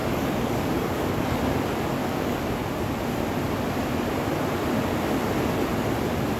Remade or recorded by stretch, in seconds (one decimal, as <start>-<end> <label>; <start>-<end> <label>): 0.0-1.4 remade; 1.4-2.0 recorded; 2.0-2.5 remade; 2.5-6.4 recorded

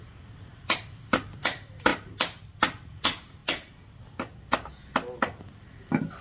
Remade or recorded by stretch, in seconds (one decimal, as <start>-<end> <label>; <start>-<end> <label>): 0.0-6.2 recorded